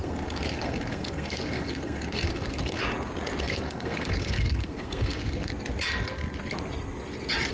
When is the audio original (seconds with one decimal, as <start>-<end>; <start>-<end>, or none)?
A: 2.8-3.4; 5.5-7.5